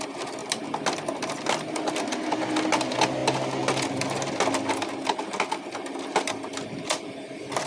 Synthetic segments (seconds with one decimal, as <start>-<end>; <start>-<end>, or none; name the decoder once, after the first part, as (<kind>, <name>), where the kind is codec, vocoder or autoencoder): none